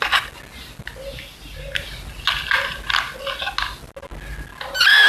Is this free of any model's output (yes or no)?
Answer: yes